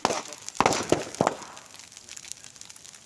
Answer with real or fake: real